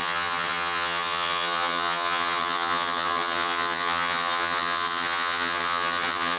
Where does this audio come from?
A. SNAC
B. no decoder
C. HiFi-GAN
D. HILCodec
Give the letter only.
C